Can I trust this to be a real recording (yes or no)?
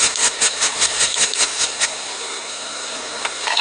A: no